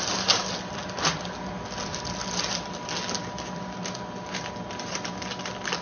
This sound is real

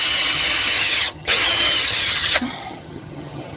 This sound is fake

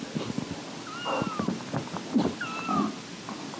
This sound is real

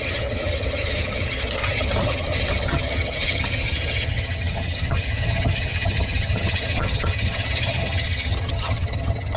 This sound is fake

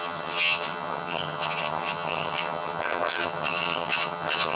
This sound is fake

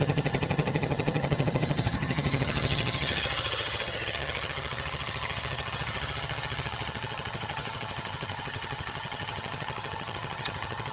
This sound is fake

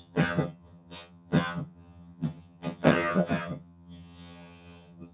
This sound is fake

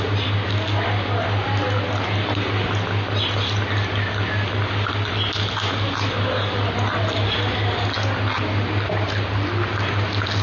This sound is real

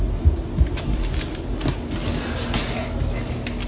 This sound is real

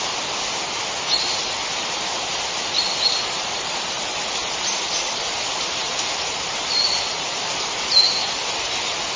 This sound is real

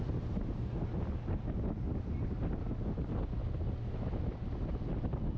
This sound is real